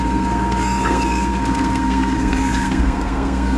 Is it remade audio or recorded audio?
remade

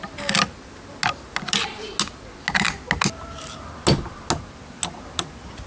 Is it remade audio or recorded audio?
recorded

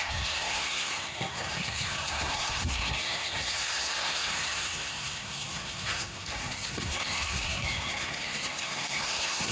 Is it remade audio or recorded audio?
remade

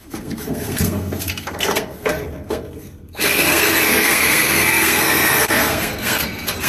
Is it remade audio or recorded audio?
remade